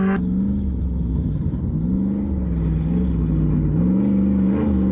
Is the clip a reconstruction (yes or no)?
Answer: no